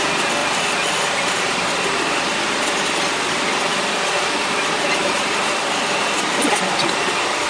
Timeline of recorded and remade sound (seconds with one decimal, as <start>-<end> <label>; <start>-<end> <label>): 0.0-0.4 recorded; 0.4-2.7 remade; 2.7-3.7 recorded; 3.7-6.6 remade; 6.6-7.5 recorded